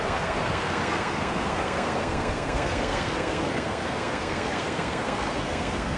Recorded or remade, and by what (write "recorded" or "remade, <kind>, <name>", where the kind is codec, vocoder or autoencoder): remade, codec, SNAC